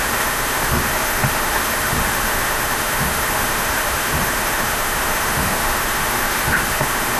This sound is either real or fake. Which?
fake